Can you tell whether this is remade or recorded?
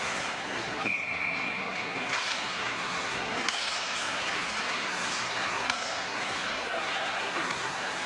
remade